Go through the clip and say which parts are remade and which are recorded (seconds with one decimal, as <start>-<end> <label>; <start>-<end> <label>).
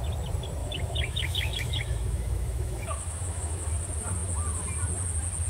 0.0-0.6 recorded; 0.6-3.7 remade; 3.7-5.5 recorded